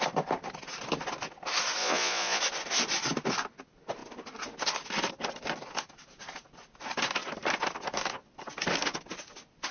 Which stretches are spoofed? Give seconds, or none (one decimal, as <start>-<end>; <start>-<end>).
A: 1.8-2.4